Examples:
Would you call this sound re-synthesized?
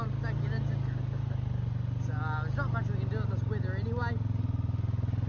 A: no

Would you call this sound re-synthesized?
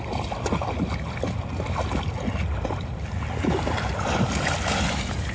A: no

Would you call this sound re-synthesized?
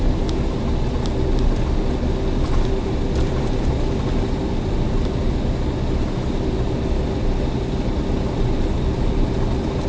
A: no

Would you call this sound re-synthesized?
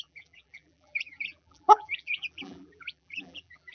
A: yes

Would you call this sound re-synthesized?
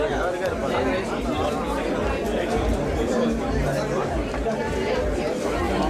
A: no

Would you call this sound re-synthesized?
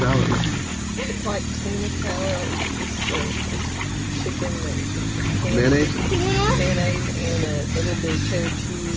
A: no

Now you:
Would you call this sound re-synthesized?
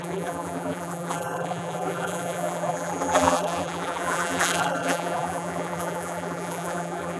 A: yes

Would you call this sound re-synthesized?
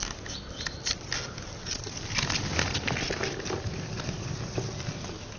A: no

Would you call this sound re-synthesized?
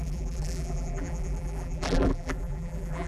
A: yes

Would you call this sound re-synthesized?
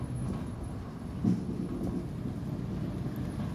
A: no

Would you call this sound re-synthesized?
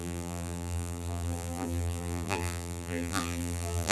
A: yes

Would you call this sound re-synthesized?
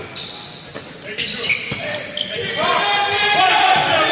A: no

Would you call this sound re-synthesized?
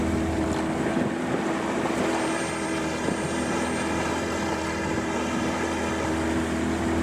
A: no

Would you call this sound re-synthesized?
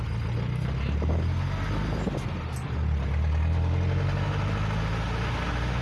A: no